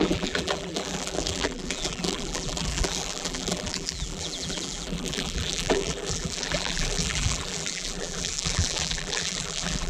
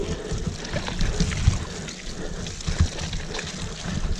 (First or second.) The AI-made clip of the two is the first